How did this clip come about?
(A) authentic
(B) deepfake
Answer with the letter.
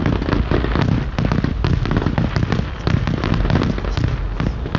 A